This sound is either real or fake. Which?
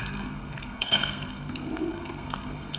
fake